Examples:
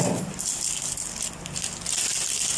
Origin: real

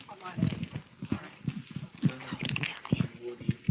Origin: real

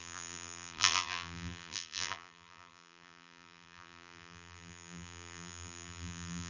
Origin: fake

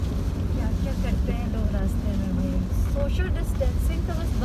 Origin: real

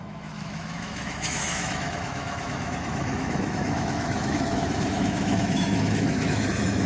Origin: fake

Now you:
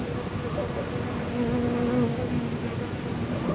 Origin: real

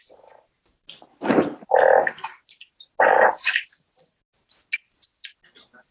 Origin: real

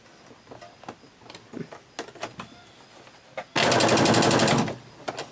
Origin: real